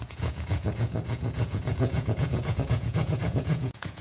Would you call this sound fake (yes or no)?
yes